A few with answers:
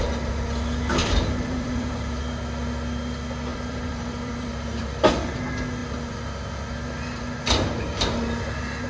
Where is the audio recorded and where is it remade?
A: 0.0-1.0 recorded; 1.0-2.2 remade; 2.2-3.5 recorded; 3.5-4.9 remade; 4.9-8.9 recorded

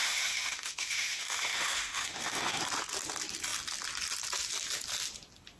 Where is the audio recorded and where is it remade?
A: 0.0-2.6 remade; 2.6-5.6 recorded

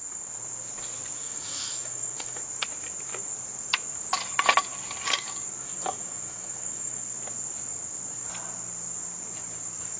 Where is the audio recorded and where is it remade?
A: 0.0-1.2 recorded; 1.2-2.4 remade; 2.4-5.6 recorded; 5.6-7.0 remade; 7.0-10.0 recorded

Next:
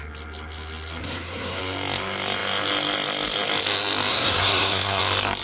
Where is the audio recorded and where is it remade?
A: 0.0-1.0 recorded; 1.0-1.6 remade; 1.6-4.1 recorded; 4.1-5.0 remade; 5.0-5.4 recorded

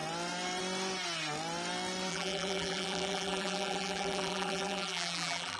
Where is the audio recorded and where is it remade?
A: 0.0-2.1 recorded; 2.1-5.6 remade

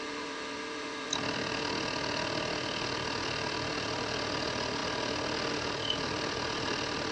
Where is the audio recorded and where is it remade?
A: 0.0-7.1 recorded

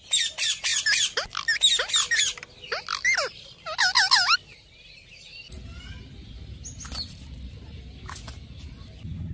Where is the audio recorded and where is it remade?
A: 0.0-9.3 recorded